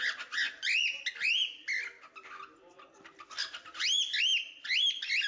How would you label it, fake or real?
real